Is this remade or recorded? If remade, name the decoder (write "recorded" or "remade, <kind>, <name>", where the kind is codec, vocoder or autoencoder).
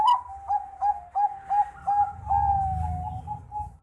recorded